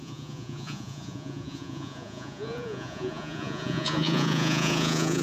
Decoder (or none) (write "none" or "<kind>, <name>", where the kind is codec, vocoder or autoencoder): vocoder, Vocos